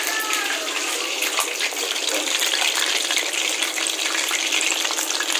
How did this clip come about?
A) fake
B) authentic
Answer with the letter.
B